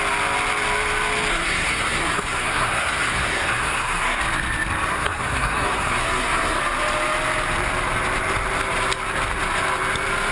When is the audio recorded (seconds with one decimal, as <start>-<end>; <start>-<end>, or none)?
0.0-1.3; 4.2-4.9; 6.6-10.3